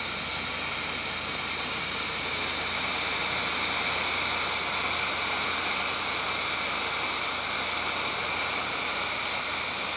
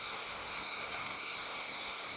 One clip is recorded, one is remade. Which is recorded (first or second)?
first